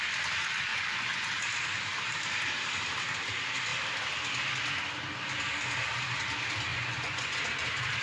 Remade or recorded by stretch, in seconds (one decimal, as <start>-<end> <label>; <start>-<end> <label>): 0.0-0.7 recorded; 0.7-1.3 remade; 1.3-6.7 recorded; 6.7-7.4 remade; 7.4-8.0 recorded